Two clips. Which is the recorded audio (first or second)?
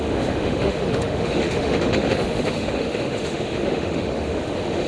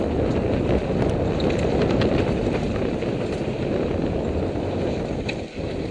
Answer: second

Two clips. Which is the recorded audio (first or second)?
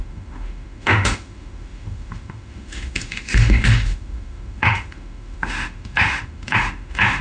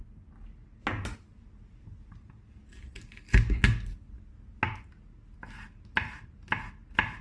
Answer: second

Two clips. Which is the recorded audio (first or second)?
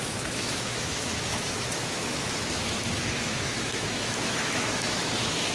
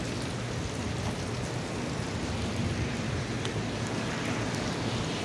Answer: second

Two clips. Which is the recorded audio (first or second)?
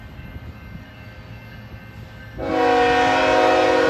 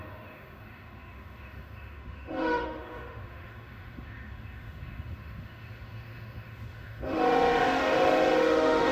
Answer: first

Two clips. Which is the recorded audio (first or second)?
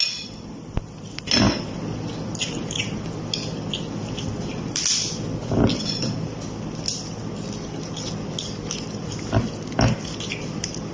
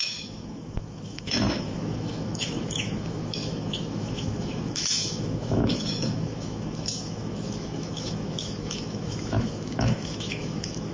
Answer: first